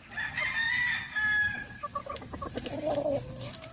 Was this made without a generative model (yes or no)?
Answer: yes